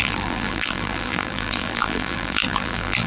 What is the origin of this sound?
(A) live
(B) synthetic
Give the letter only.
B